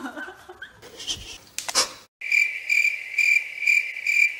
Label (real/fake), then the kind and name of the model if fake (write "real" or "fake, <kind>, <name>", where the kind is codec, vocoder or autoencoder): real